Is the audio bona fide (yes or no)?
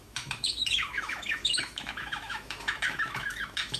no